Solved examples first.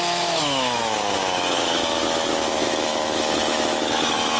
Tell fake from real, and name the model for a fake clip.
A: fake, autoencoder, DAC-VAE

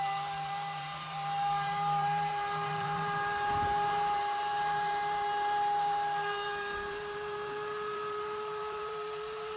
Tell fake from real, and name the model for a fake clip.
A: fake, vocoder, BigVGAN v2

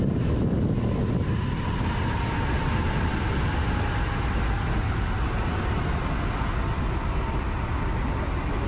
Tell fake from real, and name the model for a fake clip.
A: real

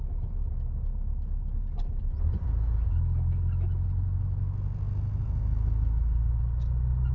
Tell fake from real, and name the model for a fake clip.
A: real